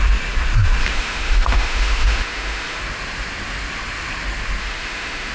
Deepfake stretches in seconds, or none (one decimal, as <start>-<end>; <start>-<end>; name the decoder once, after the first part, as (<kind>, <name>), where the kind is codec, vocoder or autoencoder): 0.8-2.8 (autoencoder, DAC-VAE); 4.6-5.3